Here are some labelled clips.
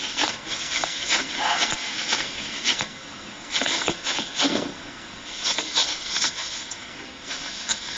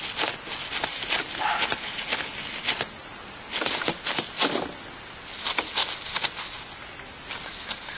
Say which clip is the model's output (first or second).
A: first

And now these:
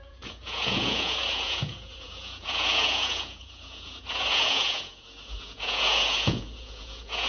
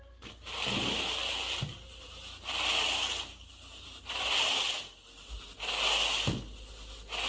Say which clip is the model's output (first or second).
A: first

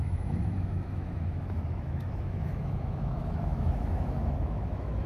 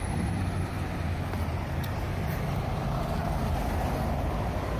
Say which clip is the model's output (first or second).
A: first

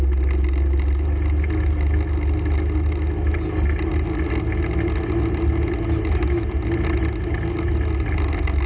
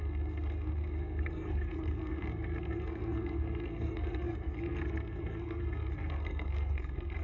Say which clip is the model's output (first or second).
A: second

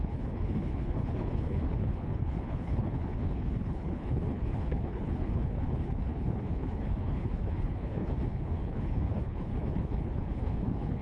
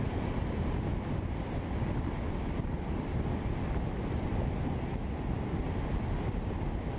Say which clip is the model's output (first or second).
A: first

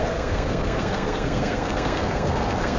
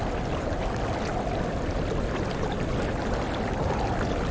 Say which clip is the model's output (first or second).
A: first